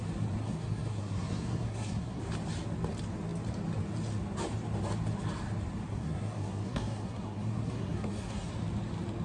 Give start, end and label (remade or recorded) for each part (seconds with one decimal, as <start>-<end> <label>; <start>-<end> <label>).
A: 0.0-0.4 recorded; 0.4-2.2 remade; 2.2-5.9 recorded; 5.9-8.5 remade; 8.5-9.2 recorded